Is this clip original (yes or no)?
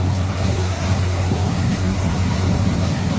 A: no